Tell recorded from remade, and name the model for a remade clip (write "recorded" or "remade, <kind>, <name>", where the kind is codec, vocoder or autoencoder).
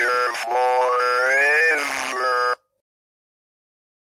recorded